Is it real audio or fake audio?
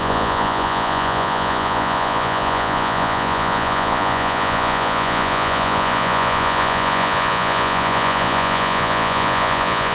fake